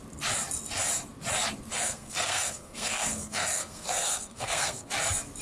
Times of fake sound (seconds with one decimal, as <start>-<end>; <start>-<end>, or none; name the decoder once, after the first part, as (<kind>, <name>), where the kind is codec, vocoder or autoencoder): 1.7-4.9 (codec, SNAC)